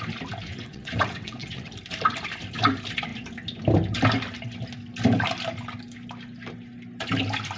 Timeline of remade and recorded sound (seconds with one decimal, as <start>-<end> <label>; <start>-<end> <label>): 0.0-0.5 recorded; 0.5-1.7 remade; 1.7-7.6 recorded